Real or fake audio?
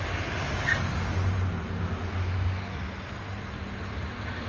real